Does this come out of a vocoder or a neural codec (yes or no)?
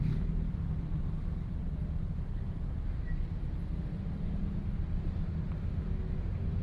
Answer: no